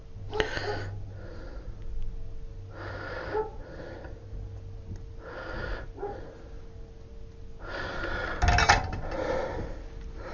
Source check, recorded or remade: recorded